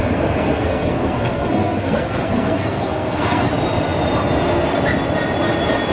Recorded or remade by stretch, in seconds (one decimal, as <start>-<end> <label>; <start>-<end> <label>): 0.0-3.5 remade; 3.5-5.9 recorded